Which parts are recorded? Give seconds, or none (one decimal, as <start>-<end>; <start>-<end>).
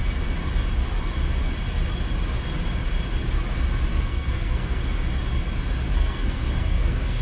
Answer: 0.0-3.9; 4.8-5.9